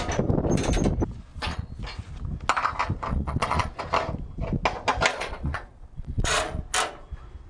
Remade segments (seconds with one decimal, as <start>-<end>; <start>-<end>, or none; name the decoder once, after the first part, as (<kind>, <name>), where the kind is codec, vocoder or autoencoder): 1.3-1.8 (vocoder, Vocos); 3.1-3.8; 5.1-6.6